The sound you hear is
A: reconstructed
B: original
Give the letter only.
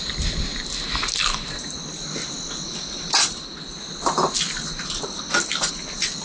B